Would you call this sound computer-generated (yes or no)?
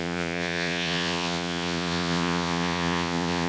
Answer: yes